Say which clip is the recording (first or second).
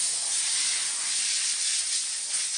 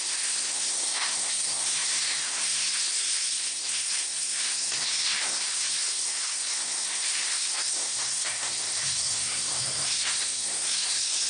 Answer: first